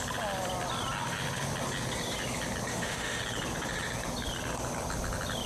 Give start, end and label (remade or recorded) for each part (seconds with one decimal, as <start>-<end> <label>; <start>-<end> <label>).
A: 0.0-2.7 recorded; 2.7-3.2 remade; 3.2-5.5 recorded